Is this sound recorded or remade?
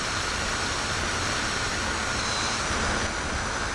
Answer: recorded